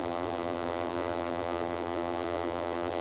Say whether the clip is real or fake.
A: fake